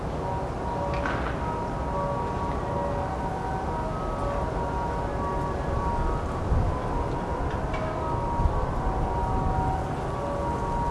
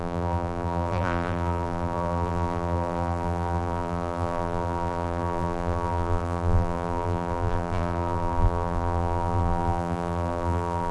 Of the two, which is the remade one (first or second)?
second